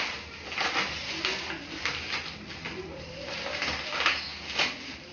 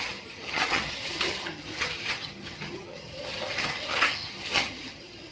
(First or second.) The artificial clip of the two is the second